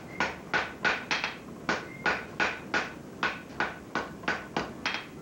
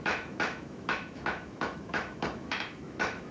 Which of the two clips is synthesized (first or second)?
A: second